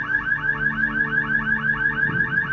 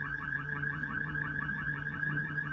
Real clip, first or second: first